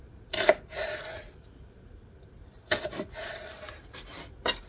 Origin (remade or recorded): recorded